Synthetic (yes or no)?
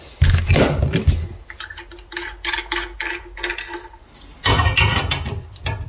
no